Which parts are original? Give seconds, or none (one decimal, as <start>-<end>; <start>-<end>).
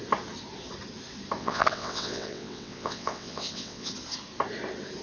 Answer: 0.0-1.4; 3.9-5.0